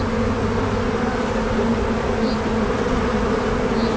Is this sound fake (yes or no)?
no